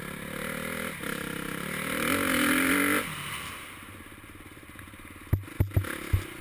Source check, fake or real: real